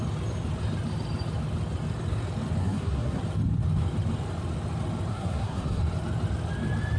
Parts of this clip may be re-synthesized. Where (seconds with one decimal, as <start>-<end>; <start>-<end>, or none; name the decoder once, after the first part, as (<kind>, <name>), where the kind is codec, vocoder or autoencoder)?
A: 2.6-3.2 (codec, SNAC); 5.1-5.8